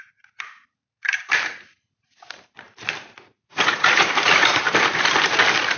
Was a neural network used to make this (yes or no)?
yes